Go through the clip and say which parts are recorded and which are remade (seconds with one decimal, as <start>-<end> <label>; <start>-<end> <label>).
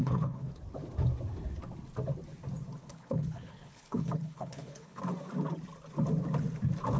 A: 0.0-0.5 remade; 0.5-2.8 recorded; 2.8-5.0 remade; 5.0-7.0 recorded